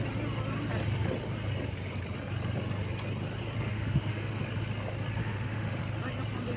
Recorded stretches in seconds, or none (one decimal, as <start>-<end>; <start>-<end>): 0.0-3.7; 4.4-5.2; 5.8-6.6